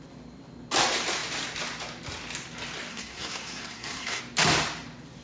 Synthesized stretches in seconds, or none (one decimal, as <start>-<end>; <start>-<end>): 2.9-4.2